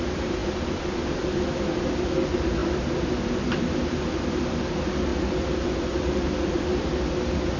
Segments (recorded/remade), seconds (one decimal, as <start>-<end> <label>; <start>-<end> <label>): 0.0-7.6 recorded